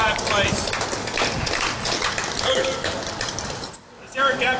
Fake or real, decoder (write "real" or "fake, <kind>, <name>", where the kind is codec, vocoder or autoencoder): fake, vocoder, BigVGAN v2